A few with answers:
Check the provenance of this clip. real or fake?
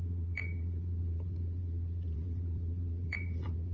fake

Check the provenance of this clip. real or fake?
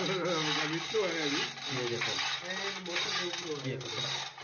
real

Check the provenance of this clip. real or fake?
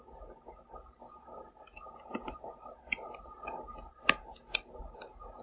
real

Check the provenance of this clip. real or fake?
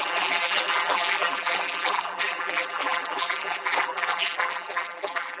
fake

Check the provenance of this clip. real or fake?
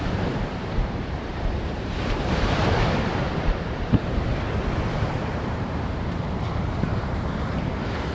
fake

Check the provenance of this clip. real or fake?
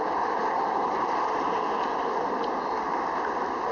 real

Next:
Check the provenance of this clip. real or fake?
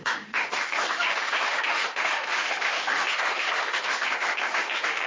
fake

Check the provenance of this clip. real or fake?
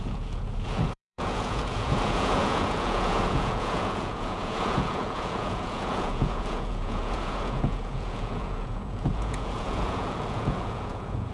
fake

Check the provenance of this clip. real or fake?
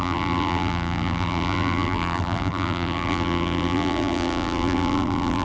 fake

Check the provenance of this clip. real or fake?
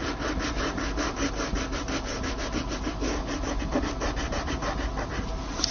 real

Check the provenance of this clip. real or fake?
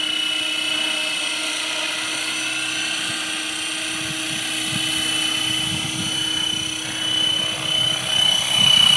real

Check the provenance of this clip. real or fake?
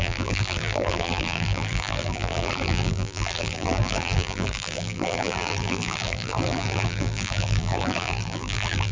fake